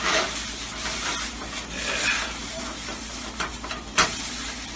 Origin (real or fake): real